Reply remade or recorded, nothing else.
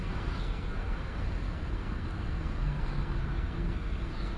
remade